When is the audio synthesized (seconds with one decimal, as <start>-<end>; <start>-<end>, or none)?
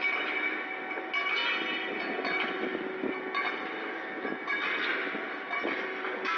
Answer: none